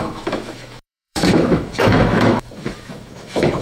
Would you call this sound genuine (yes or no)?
no